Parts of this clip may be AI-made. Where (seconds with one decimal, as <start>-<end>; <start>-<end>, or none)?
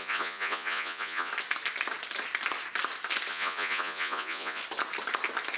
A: 0.0-1.3; 3.3-4.6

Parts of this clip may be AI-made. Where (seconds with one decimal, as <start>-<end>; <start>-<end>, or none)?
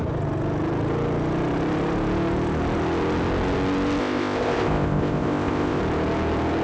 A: 4.0-5.8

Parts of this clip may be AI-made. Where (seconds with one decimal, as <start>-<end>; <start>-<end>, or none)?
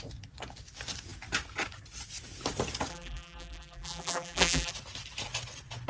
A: 2.9-4.7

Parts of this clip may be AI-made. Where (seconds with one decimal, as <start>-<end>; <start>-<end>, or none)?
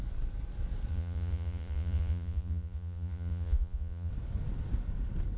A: 0.9-4.1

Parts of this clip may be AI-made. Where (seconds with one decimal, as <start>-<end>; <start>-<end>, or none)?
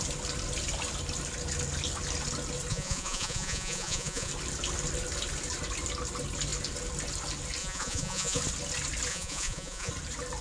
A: 2.7-4.3; 7.6-8.4; 9.1-9.9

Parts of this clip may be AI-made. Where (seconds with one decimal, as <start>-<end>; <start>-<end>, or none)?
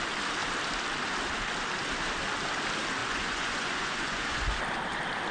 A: 3.0-4.6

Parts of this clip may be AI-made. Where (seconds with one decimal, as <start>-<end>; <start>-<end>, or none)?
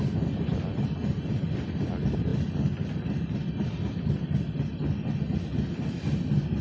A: none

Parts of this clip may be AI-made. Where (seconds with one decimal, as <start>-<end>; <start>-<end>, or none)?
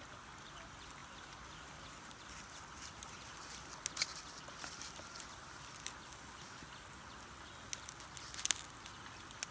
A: none